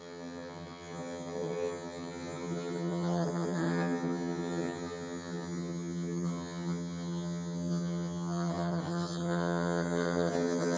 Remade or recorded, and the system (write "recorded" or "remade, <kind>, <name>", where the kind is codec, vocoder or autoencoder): remade, vocoder, HiFi-GAN